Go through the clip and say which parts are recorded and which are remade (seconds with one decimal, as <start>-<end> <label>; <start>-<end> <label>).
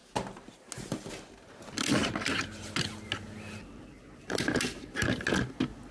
0.0-0.7 remade; 0.7-5.9 recorded